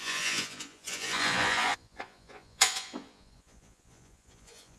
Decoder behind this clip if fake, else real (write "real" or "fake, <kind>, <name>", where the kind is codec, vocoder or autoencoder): fake, vocoder, Vocos